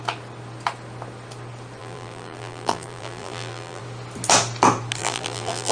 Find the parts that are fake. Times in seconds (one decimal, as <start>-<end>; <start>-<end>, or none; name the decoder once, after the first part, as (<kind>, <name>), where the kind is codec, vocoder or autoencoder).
1.8-3.8 (vocoder, BigVGAN v2); 5.0-5.7